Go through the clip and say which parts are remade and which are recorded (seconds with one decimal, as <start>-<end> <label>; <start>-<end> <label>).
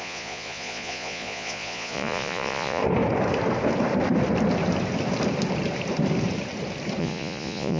0.0-2.8 remade; 2.8-7.0 recorded; 7.0-7.8 remade